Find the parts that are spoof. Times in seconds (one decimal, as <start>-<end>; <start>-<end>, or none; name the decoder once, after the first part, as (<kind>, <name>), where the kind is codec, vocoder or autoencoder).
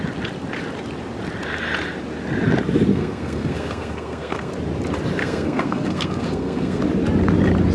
2.9-4.5 (codec, SNAC); 5.2-6.8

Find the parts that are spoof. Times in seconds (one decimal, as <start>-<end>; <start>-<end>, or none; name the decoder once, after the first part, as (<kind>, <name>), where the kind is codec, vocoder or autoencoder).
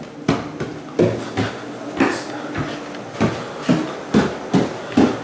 none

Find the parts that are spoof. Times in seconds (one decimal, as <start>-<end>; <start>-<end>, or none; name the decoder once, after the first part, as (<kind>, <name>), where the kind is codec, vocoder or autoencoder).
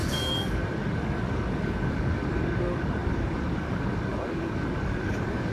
0.0-5.5 (codec, DAC)